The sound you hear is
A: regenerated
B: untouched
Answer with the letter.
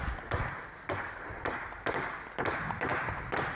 B